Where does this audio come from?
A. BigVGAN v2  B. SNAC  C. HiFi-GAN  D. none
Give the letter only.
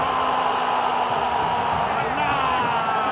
D